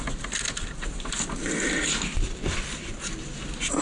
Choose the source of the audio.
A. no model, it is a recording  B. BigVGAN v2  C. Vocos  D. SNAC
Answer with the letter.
A